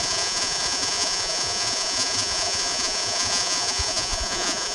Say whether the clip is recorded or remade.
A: remade